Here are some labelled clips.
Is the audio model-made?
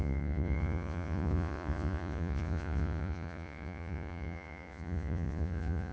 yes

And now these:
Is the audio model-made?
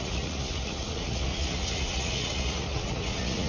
yes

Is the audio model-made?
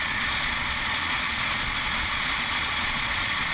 yes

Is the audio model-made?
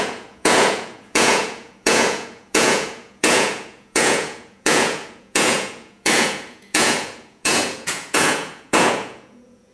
yes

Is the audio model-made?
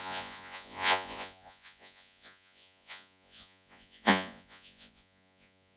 yes